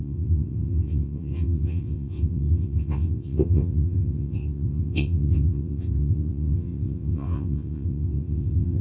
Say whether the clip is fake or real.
fake